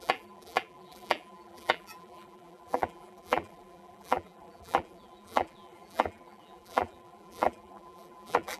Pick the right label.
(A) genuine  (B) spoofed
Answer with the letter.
B